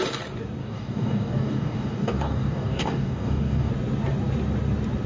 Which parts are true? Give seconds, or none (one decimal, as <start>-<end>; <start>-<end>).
0.0-0.6; 3.7-5.1